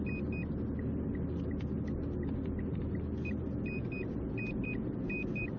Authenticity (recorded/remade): recorded